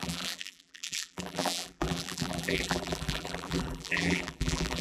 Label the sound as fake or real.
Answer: fake